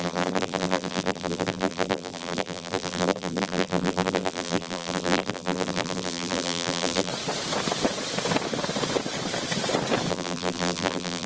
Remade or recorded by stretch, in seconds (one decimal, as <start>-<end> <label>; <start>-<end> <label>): 0.0-7.1 remade; 7.1-10.1 recorded; 10.1-11.3 remade